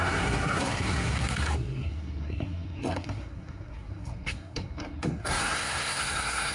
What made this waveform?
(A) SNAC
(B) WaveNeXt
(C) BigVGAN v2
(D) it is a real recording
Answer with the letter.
A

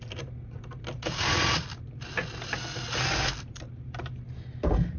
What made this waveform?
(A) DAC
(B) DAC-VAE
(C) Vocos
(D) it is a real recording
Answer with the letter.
D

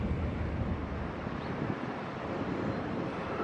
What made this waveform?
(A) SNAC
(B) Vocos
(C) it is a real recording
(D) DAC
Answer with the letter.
C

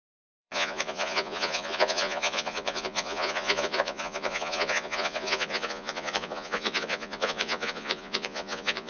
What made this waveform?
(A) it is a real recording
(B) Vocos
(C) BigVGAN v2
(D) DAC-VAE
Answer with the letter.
B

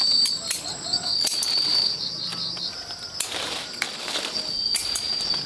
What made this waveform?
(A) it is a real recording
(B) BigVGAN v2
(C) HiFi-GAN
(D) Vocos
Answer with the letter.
A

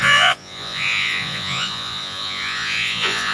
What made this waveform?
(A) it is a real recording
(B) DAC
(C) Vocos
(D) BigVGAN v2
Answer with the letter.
C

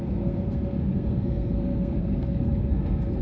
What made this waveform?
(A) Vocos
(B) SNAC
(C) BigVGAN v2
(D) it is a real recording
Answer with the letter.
B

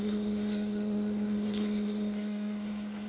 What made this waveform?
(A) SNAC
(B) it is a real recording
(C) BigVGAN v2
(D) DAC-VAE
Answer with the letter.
A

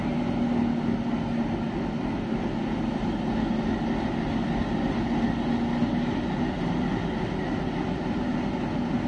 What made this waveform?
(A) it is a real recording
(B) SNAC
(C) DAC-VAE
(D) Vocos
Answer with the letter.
A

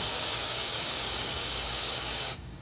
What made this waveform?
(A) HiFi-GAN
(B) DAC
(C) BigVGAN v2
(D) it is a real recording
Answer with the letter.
B